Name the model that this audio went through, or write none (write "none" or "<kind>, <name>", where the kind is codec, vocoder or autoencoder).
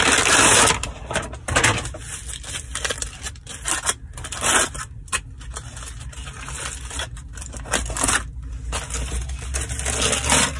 none